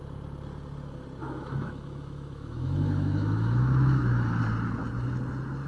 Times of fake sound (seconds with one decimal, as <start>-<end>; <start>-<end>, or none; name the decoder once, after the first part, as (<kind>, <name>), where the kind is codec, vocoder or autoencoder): 1.2-4.4 (autoencoder, DAC-VAE)